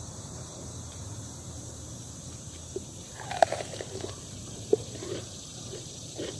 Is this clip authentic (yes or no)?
no